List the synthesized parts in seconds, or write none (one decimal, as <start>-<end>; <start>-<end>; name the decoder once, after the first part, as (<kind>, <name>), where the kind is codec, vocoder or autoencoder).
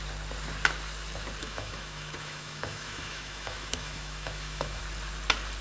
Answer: 1.4-4.8 (autoencoder, DAC-VAE)